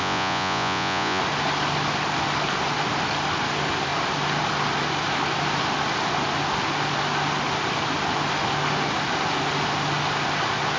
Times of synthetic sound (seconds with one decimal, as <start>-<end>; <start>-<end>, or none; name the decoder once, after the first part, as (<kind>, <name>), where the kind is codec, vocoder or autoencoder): 0.0-1.2 (vocoder, Vocos)